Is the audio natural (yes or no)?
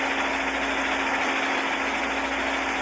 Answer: yes